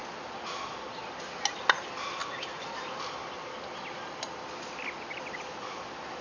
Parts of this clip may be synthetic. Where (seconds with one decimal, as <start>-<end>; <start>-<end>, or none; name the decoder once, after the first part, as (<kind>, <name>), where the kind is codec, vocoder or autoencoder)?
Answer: none